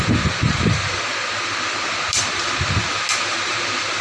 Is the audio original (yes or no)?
no